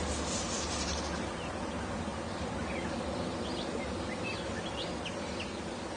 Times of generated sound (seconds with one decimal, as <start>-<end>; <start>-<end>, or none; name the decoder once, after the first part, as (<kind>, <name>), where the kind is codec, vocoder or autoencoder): none